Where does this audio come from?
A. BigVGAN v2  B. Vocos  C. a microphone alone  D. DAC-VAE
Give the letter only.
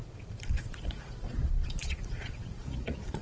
B